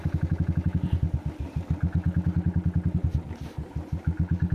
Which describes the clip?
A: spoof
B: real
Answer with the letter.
B